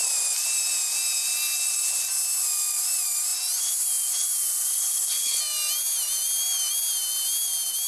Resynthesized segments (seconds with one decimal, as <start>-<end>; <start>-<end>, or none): 4.7-5.4